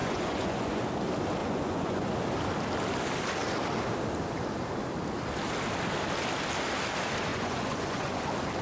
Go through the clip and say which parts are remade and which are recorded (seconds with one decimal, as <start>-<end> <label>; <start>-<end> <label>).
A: 0.0-0.8 remade; 0.8-1.4 recorded; 1.4-2.1 remade; 2.1-7.3 recorded; 7.3-8.2 remade; 8.2-8.6 recorded